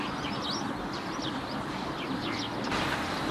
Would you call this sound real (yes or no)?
yes